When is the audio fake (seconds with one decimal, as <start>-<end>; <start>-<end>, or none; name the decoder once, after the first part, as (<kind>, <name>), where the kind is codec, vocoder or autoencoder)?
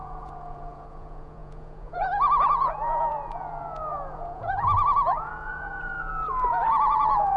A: 0.0-7.4 (vocoder, Vocos)